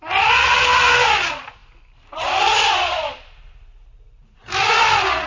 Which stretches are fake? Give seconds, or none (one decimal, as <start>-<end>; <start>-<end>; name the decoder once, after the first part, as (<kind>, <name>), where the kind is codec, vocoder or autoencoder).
none